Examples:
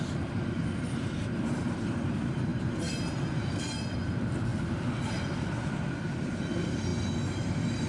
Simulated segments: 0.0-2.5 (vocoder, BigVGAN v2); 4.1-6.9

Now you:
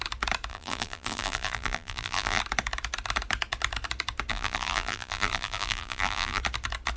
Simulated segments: 0.5-2.4 (vocoder, BigVGAN v2); 4.3-6.4

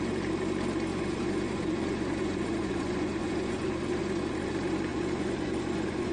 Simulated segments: 0.9-4.5 (vocoder, Vocos); 4.9-6.1

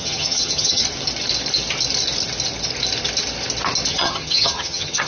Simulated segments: 0.0-0.8 (vocoder, HiFi-GAN); 3.9-5.1